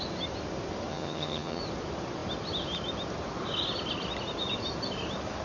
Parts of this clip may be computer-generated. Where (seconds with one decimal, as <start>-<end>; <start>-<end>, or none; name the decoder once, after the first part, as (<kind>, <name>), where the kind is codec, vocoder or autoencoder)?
0.9-1.6 (vocoder, HiFi-GAN)